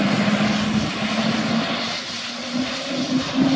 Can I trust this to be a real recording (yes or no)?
yes